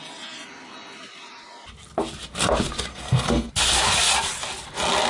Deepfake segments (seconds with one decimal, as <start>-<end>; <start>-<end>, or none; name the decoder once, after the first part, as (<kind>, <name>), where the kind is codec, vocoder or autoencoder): 2.9-3.5 (codec, SNAC)